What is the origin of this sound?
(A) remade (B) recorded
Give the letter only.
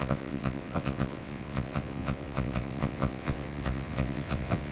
A